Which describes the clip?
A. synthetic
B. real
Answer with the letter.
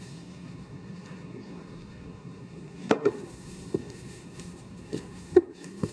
A